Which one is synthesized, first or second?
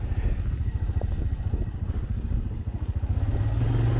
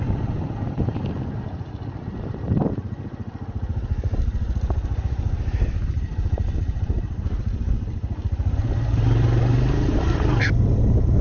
second